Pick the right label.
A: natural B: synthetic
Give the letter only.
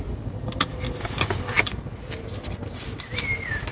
A